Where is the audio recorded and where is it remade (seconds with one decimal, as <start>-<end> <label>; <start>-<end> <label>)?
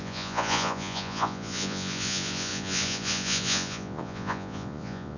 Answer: 0.0-5.2 remade